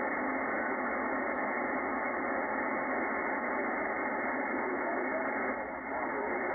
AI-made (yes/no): no